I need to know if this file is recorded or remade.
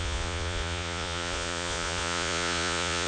remade